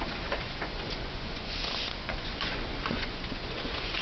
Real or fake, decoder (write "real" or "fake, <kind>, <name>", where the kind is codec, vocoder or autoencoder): fake, vocoder, Vocos